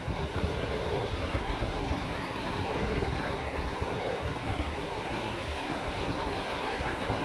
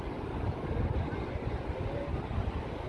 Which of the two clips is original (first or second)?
second